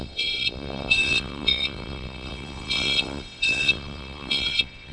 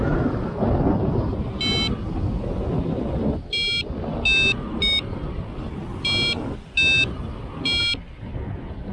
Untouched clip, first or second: second